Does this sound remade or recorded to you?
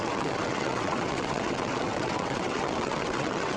remade